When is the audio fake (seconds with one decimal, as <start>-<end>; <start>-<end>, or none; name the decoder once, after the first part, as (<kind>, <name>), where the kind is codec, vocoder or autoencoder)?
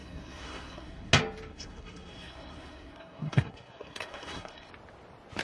0.0-1.1 (codec, SNAC); 1.5-4.7